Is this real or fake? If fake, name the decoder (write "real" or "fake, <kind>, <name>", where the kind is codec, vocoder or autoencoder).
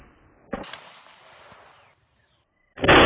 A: real